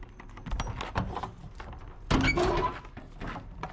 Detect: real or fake real